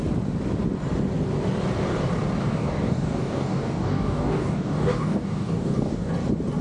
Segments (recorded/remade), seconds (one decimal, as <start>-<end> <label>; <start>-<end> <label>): 0.0-2.4 recorded; 2.4-6.1 remade; 6.1-6.6 recorded